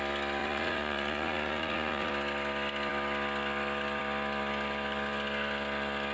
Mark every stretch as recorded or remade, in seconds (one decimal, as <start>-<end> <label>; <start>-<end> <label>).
0.0-0.4 recorded; 0.4-2.1 remade; 2.1-6.1 recorded